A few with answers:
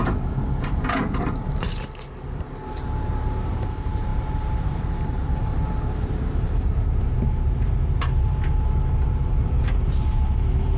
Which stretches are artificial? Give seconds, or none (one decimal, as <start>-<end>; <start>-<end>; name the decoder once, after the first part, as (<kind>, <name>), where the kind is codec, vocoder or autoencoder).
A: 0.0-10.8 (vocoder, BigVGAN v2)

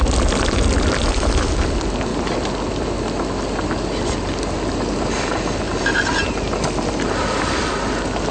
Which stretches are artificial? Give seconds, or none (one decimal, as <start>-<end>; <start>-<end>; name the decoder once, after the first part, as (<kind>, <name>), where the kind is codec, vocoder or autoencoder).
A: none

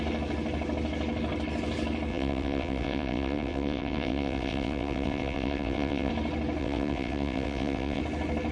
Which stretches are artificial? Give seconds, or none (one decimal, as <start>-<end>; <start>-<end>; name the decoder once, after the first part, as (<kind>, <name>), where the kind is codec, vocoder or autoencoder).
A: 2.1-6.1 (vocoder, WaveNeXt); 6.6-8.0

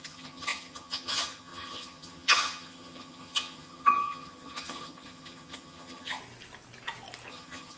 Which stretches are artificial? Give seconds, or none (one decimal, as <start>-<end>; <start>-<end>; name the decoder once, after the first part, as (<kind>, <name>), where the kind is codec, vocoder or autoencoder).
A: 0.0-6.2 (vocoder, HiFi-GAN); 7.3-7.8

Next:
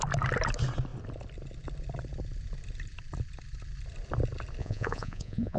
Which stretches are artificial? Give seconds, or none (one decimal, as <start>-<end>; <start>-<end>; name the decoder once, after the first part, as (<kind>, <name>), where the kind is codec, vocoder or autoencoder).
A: 4.6-5.6 (vocoder, Vocos)

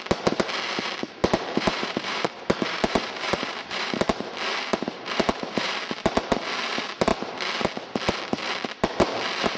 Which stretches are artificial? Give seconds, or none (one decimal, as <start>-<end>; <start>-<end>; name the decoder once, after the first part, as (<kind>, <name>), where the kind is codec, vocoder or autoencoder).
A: 1.2-4.0 (vocoder, BigVGAN v2); 4.7-5.7

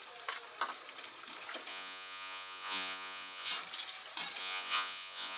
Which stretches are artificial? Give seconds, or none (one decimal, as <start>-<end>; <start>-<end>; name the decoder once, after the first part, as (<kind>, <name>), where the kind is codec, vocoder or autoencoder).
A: 1.7-3.5 (vocoder, Vocos); 4.4-5.4

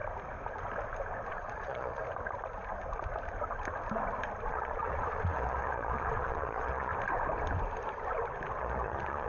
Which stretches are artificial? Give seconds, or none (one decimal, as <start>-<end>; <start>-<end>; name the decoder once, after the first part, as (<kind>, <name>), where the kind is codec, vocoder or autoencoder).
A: 1.3-2.0 (vocoder, Vocos); 4.5-6.9; 8.6-9.3